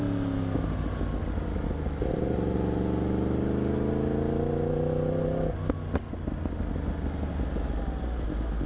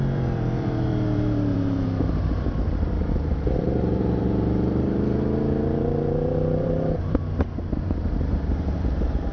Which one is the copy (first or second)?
second